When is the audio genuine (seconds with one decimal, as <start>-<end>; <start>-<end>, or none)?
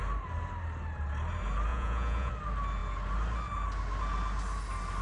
0.0-1.7; 2.3-5.0